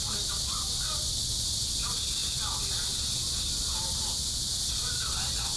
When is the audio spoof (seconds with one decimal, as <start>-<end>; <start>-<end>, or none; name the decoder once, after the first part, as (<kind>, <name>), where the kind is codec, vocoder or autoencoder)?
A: none